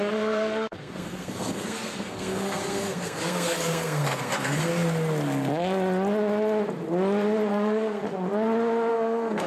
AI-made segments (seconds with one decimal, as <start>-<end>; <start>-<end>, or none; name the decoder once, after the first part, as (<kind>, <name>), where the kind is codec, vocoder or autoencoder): 0.0-4.7 (codec, SNAC); 7.5-8.0; 8.9-9.5

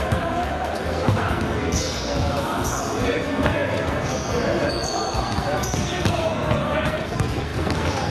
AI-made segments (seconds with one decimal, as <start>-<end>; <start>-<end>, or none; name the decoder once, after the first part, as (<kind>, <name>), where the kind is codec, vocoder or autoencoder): 0.0-8.1 (codec, SNAC)

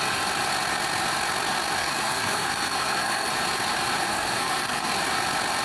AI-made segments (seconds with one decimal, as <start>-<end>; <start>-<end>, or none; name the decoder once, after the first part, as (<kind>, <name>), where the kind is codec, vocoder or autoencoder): 1.8-3.3 (codec, SNAC); 4.1-4.9

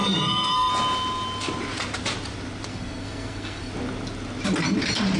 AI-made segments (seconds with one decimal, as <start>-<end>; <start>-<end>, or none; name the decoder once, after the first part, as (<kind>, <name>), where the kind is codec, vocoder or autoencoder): 0.0-0.7 (codec, SNAC); 2.7-3.7

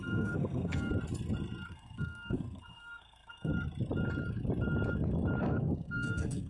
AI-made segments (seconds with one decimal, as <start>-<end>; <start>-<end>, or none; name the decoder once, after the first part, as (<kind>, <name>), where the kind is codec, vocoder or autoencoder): 0.0-0.9 (codec, SNAC); 1.7-3.5; 5.4-6.5

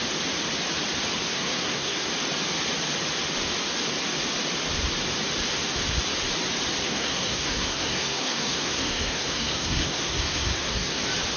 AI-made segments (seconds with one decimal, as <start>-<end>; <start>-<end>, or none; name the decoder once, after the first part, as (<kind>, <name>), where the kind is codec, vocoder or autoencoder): 1.3-2.1 (codec, SNAC); 6.8-11.0

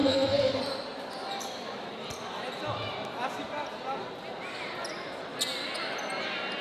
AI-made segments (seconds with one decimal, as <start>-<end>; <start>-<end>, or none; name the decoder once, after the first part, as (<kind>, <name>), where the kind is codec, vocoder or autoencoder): 0.0-0.6 (codec, SNAC)